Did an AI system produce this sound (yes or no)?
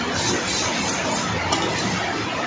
no